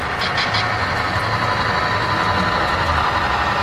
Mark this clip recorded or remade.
recorded